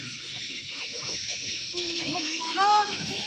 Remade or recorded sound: remade